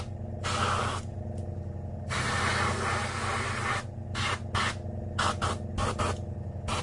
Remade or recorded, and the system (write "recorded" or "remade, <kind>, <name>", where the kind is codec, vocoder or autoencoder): recorded